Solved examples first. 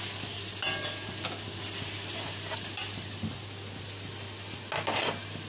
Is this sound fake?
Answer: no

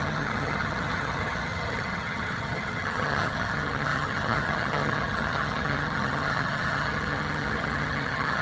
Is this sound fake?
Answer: yes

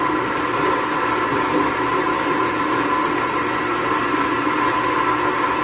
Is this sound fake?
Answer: no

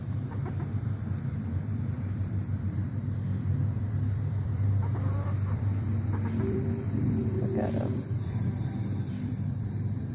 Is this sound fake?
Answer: yes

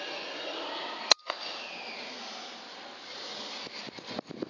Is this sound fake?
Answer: no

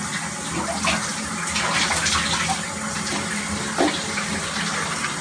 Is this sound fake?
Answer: no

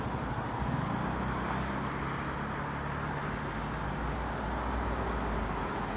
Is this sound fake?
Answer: no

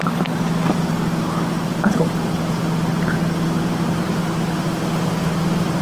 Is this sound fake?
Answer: no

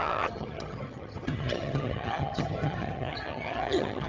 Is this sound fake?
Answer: yes